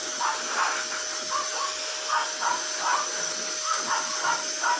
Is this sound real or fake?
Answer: real